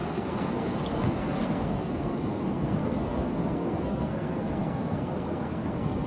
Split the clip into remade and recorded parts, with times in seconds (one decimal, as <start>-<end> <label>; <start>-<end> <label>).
0.0-6.1 remade